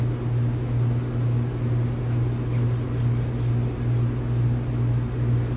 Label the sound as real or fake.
real